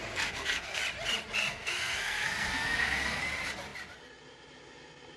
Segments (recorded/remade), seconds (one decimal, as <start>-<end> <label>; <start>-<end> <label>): 0.0-0.8 remade; 0.8-1.5 recorded; 1.5-3.2 remade; 3.2-5.2 recorded